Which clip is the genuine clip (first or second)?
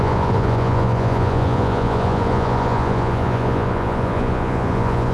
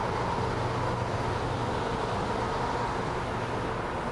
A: second